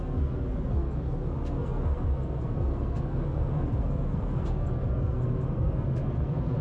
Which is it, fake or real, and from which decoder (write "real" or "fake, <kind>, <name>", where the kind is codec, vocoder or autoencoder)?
fake, codec, SNAC